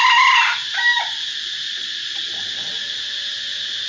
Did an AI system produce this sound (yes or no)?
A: no